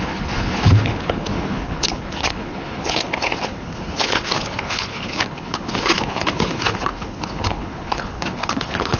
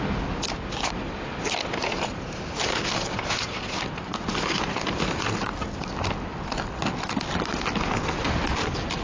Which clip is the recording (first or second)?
second